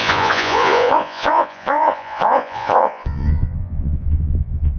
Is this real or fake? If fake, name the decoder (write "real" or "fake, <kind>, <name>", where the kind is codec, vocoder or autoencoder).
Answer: fake, vocoder, Vocos